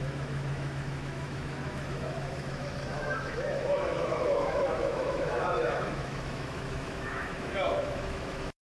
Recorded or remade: remade